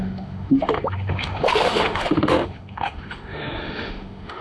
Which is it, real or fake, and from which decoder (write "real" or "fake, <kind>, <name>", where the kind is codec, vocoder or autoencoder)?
fake, autoencoder, DAC-VAE